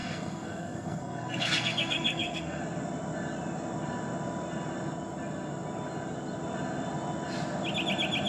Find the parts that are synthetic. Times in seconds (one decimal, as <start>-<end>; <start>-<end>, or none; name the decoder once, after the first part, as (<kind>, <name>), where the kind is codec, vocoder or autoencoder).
0.0-2.6 (codec, SNAC)